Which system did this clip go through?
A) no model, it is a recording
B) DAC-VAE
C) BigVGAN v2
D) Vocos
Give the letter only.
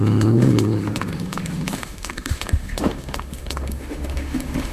B